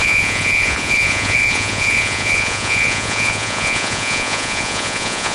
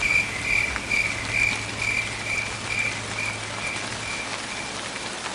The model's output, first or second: first